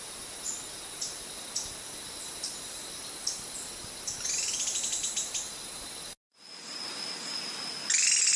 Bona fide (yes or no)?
yes